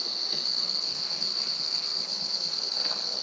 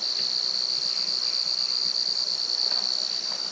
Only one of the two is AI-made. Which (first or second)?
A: first